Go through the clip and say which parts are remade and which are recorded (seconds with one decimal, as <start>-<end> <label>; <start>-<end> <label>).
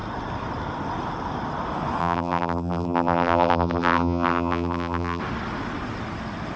0.0-2.0 recorded; 2.0-5.2 remade; 5.2-6.6 recorded